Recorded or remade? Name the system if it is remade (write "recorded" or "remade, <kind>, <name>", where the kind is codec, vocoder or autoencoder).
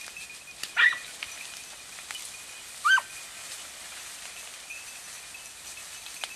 recorded